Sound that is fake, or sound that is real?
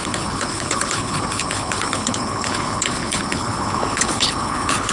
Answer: fake